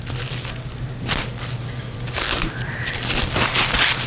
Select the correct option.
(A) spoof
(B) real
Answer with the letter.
B